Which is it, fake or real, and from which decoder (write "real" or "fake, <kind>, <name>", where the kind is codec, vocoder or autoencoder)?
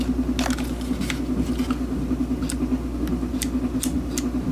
real